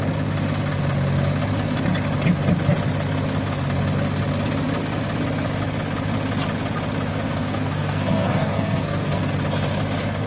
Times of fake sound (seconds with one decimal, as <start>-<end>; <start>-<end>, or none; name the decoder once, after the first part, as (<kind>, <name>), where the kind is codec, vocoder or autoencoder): 7.1-9.3 (codec, SNAC)